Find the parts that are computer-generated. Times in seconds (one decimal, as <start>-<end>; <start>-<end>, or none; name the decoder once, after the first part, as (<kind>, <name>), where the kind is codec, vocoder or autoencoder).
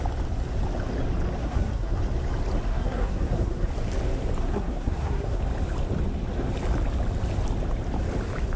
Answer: 1.4-2.0 (codec, SNAC); 2.7-3.7; 4.4-5.4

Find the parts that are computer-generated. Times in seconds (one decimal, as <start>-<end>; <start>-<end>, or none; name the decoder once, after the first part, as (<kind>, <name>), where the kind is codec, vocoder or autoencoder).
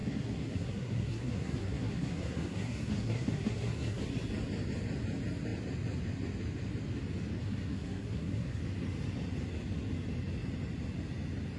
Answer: 0.0-4.0 (codec, SNAC); 7.4-8.6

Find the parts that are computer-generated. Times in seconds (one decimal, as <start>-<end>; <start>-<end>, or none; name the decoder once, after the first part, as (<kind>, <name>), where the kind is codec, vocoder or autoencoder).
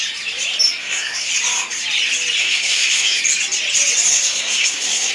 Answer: 0.8-1.3 (codec, SNAC); 2.4-3.2; 4.1-5.1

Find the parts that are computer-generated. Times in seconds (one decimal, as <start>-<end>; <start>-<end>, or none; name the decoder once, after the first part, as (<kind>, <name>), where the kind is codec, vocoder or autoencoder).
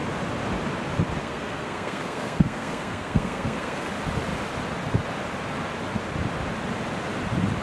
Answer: 1.2-3.9 (codec, SNAC)